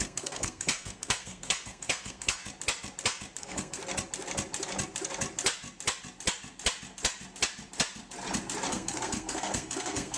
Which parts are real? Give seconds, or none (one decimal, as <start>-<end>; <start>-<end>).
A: 2.4-3.4; 3.8-8.7